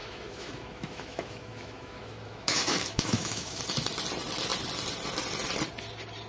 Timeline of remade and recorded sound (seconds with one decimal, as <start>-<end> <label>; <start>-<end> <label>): 0.0-3.6 remade; 3.6-6.3 recorded